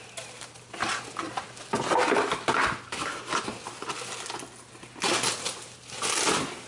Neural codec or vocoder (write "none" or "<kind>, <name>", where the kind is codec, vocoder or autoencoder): none